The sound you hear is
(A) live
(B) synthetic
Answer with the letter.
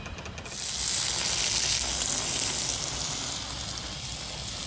A